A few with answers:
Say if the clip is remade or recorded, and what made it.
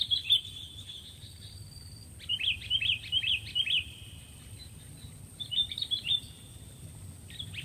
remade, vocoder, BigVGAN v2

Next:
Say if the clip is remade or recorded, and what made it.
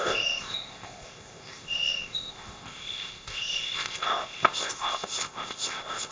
remade, codec, ZipCodec